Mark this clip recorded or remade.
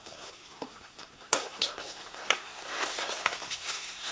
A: remade